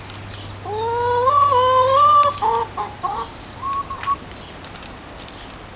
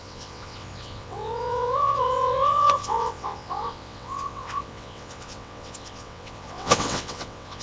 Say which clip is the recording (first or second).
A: first